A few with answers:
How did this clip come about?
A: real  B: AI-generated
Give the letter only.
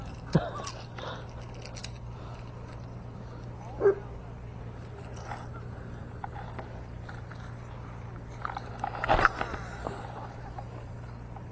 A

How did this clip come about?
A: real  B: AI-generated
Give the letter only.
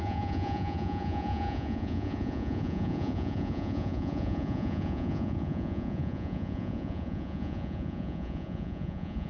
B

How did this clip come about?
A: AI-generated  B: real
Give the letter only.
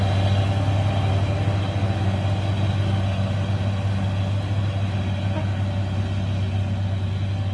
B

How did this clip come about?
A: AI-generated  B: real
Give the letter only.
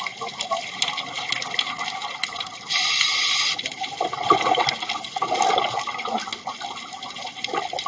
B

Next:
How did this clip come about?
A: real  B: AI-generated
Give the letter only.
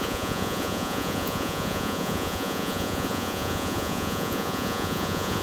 B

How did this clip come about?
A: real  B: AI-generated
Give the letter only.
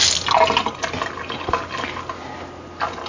A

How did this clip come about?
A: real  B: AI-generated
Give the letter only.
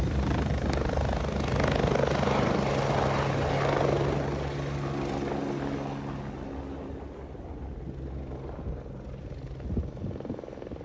A